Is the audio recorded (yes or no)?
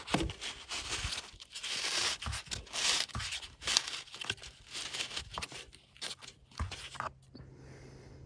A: yes